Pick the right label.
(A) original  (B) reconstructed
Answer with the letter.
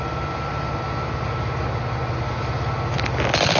A